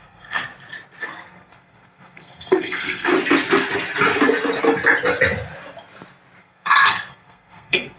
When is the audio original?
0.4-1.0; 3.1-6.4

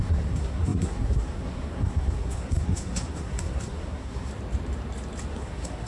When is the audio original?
4.3-5.3

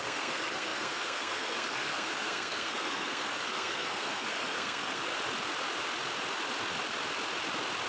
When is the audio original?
5.1-7.9

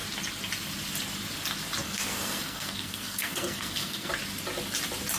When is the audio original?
0.0-1.8; 4.1-5.2

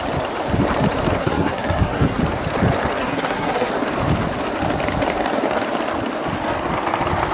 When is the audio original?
0.0-1.2; 2.2-3.0; 3.7-7.3

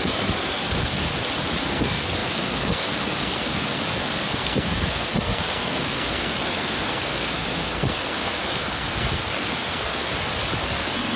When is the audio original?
1.0-1.7; 10.1-10.6

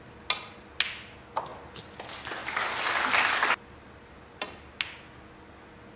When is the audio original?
0.0-6.0